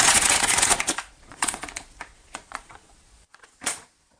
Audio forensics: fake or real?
fake